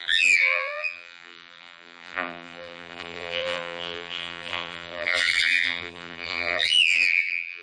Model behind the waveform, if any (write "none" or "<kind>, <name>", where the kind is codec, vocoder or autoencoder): vocoder, BigVGAN v2